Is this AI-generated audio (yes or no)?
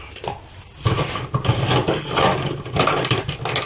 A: no